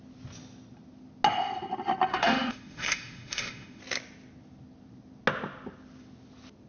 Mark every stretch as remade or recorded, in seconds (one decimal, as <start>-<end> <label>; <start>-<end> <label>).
0.0-2.1 recorded; 2.1-3.8 remade; 3.8-6.7 recorded